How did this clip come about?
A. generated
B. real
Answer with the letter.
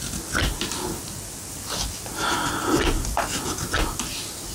B